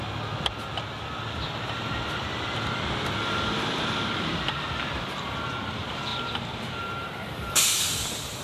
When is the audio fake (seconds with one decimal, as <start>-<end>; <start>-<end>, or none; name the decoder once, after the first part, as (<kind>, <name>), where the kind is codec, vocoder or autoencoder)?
none